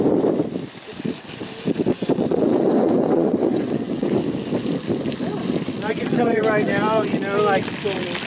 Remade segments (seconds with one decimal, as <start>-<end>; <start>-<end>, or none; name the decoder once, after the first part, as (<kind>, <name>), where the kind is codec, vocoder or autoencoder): 1.9-4.2 (vocoder, WaveNeXt); 5.9-6.4